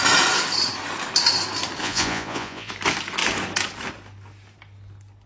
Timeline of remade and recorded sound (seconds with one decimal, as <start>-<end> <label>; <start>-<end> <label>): 0.0-1.8 recorded; 1.8-2.7 remade; 2.7-5.3 recorded